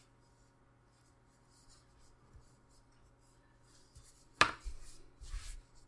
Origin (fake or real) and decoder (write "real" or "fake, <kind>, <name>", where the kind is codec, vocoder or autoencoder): real